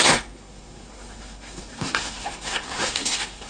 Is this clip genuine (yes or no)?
no